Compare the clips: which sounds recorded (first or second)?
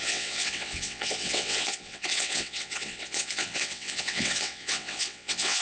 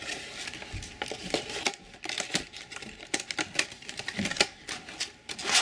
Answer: second